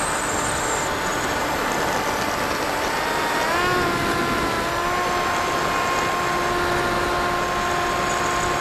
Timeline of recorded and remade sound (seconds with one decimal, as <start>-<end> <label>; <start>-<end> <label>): 0.0-1.1 recorded; 1.1-1.7 remade; 1.7-8.6 recorded